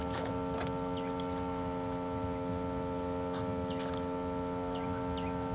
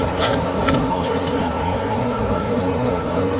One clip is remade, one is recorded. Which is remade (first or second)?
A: second